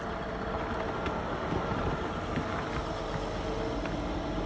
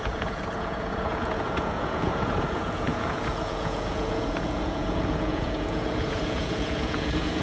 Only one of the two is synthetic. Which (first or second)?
second